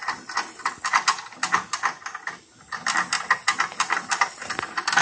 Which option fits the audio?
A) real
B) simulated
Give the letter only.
A